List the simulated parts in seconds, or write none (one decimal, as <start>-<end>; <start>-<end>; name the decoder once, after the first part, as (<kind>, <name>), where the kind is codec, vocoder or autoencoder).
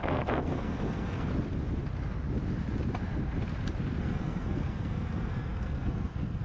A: 0.0-1.3 (codec, SNAC); 4.0-6.4